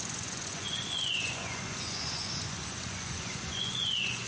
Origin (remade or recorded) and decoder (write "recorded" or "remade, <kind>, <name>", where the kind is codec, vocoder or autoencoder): remade, vocoder, Vocos